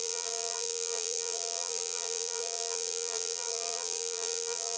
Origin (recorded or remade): remade